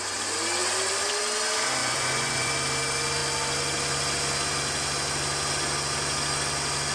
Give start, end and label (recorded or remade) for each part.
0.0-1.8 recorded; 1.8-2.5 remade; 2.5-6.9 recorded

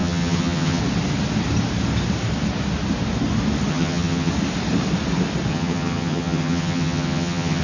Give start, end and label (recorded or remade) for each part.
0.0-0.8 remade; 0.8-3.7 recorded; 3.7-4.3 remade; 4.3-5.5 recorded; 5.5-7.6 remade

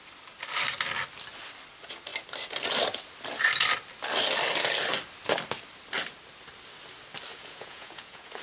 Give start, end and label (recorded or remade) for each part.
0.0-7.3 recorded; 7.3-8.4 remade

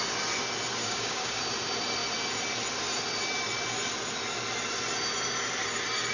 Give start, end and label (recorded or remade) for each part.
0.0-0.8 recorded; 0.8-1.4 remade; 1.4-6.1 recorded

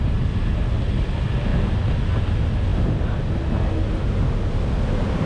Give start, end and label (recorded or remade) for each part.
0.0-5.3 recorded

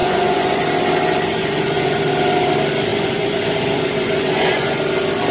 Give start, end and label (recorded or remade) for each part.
0.0-0.6 remade; 0.6-1.4 recorded; 1.4-2.0 remade; 2.0-2.9 recorded; 2.9-4.8 remade; 4.8-5.3 recorded